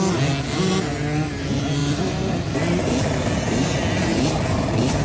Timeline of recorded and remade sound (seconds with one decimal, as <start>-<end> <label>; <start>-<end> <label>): 0.0-1.8 recorded; 1.8-2.8 remade; 2.8-5.0 recorded